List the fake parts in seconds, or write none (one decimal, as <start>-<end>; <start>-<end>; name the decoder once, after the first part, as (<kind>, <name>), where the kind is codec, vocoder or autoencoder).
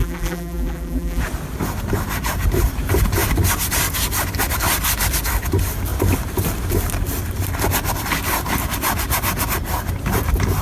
0.0-1.2 (vocoder, BigVGAN v2)